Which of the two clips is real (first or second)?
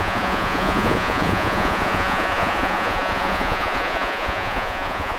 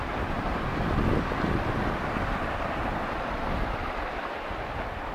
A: second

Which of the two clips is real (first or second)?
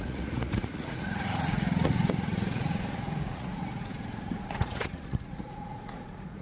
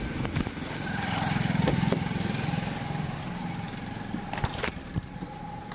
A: second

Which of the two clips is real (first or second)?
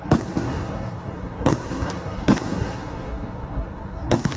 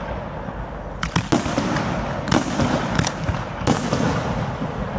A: second